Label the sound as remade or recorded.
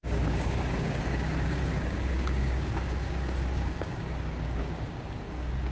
remade